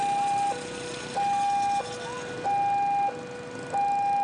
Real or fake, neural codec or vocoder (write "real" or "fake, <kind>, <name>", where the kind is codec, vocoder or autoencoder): real